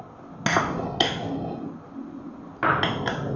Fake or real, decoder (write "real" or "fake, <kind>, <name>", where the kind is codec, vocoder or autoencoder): real